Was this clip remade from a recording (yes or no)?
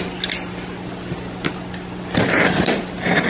no